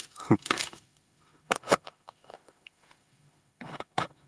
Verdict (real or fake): fake